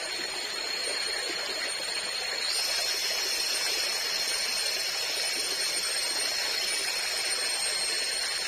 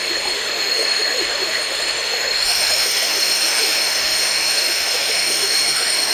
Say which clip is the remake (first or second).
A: second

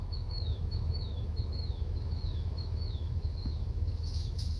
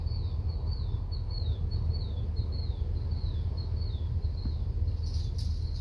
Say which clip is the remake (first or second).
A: first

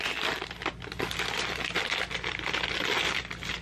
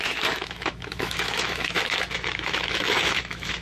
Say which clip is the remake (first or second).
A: second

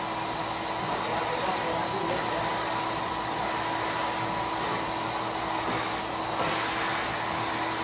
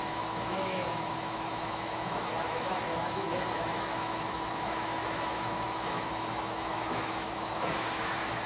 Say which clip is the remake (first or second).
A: second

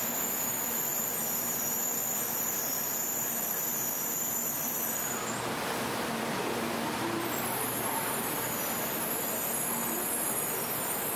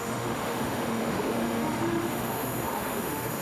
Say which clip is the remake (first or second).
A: second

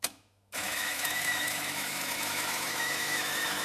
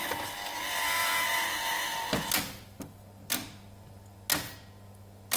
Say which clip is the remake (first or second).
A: first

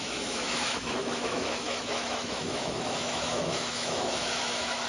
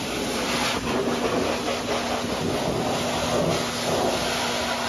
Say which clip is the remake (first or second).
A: first